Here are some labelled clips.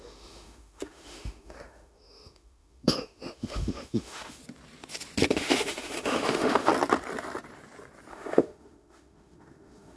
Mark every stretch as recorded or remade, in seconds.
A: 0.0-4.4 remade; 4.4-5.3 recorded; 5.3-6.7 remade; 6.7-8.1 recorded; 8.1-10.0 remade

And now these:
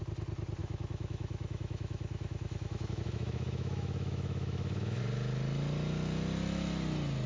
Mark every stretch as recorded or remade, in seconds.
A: 0.0-0.6 recorded; 0.6-5.0 remade; 5.0-7.3 recorded